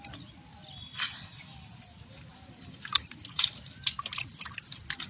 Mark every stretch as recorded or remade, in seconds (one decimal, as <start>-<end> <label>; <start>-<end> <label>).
0.0-5.1 recorded